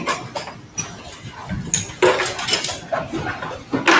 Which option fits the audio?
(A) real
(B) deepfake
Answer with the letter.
A